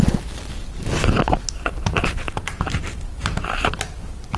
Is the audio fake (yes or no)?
yes